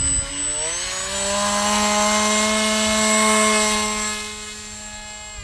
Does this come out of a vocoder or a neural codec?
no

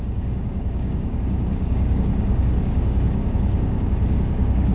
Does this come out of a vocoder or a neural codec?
yes